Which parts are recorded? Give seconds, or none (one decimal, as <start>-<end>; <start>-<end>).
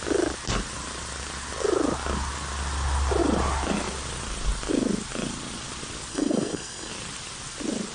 0.0-6.1; 6.9-7.9